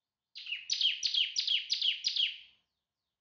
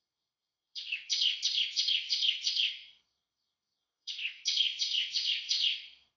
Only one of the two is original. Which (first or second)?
first